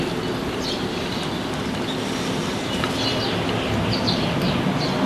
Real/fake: real